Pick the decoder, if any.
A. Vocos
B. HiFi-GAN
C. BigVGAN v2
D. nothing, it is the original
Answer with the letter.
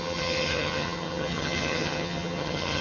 B